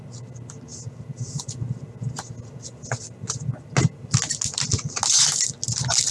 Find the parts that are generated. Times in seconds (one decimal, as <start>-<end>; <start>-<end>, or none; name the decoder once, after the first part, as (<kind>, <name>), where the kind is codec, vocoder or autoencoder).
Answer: none